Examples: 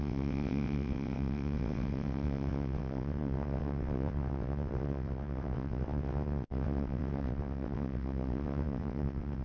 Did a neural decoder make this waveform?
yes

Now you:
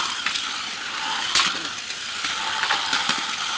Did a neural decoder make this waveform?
no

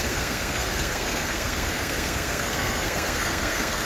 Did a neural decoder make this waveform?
yes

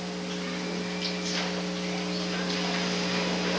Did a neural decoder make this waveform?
no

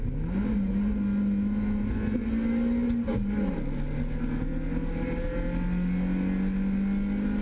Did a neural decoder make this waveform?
no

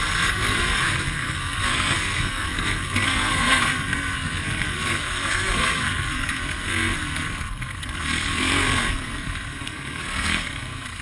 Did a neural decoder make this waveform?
yes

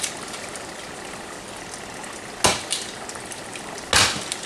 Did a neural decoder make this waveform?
no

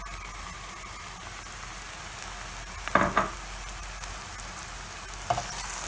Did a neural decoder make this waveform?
no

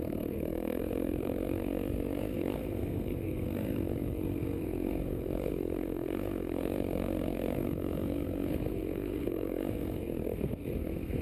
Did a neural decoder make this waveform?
yes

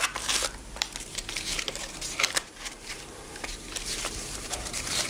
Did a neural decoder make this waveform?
yes